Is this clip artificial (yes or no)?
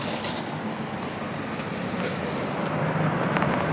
no